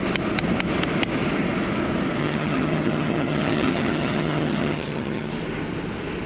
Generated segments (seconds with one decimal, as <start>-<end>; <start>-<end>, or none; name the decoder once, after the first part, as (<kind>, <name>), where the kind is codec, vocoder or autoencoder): 2.2-5.3 (vocoder, HiFi-GAN)